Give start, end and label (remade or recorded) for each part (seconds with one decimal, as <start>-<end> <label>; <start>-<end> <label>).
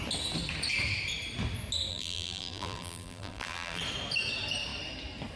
0.0-1.9 recorded; 1.9-3.8 remade; 3.8-5.4 recorded